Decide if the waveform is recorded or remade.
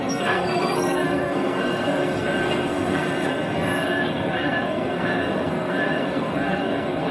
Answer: remade